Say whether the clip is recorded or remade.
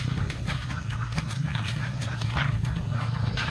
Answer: remade